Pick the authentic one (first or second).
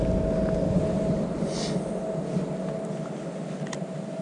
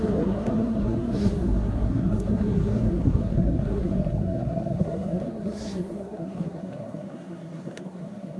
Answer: first